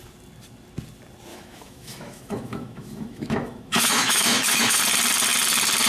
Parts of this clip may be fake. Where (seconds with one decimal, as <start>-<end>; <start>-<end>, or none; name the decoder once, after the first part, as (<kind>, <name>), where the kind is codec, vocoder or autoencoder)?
1.3-4.8 (autoencoder, DAC-VAE)